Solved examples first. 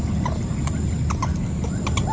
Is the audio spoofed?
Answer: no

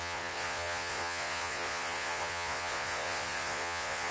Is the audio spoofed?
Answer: yes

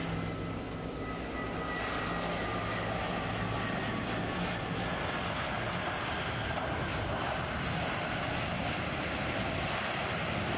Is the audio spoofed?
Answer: no